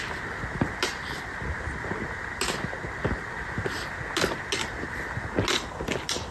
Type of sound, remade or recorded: recorded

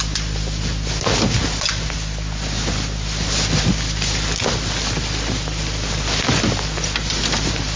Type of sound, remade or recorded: recorded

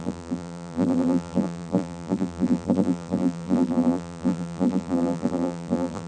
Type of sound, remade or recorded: remade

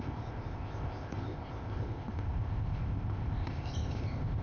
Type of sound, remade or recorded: remade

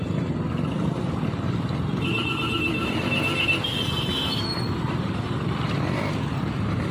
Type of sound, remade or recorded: recorded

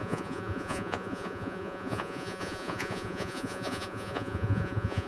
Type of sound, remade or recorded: remade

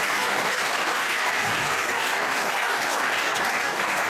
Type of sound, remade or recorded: remade